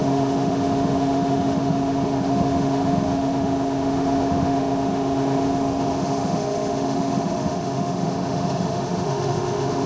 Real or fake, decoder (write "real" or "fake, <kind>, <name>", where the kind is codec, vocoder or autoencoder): fake, autoencoder, DAC-VAE